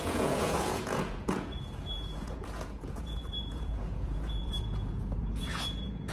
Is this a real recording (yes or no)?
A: no